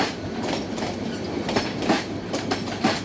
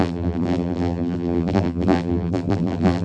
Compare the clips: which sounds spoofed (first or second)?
second